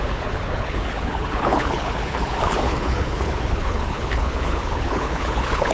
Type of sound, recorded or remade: remade